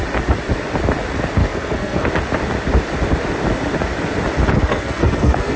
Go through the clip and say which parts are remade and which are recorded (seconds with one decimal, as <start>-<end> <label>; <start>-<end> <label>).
0.0-1.4 recorded; 1.4-2.1 remade; 2.1-4.5 recorded; 4.5-5.6 remade